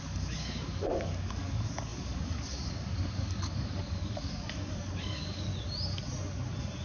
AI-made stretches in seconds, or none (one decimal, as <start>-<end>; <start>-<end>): 0.0-5.5